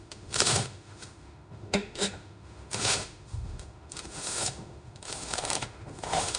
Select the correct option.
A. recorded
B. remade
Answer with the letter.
B